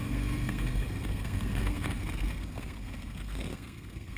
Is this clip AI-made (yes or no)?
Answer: yes